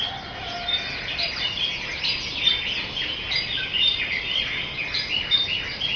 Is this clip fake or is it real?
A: real